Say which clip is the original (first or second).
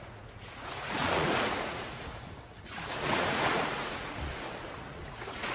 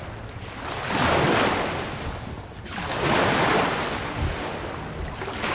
second